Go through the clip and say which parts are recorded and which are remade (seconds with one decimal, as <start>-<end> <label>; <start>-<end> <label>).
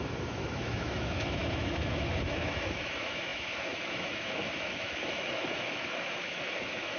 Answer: 0.0-7.0 remade